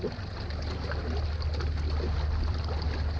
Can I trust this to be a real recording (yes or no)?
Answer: yes